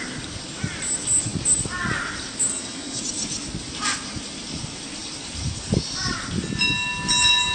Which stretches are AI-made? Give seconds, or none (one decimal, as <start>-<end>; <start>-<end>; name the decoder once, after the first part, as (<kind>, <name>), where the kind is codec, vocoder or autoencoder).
2.5-3.0 (codec, SNAC)